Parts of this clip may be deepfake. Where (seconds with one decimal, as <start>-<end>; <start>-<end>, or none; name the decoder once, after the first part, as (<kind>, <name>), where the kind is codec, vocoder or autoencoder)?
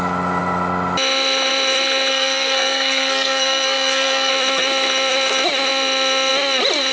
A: 2.1-4.3 (codec, SNAC)